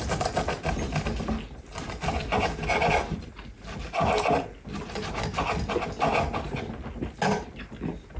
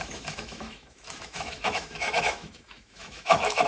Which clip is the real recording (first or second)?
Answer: first